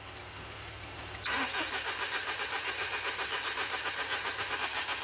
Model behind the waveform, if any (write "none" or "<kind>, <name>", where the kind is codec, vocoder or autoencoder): none